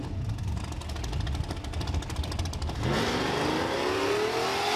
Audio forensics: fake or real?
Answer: real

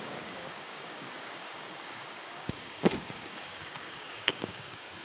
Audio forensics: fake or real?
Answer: fake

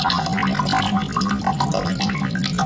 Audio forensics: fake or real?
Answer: real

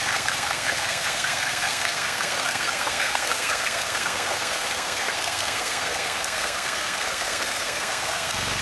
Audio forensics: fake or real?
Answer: fake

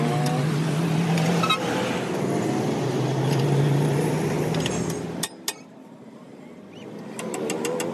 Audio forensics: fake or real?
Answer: real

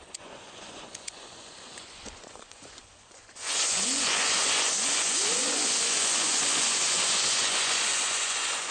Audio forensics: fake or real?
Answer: fake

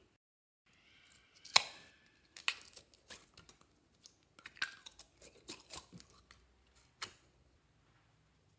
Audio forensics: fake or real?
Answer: real